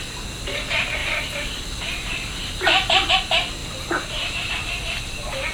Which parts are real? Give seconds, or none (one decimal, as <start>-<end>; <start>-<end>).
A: 0.0-1.0; 3.1-3.6; 4.5-5.5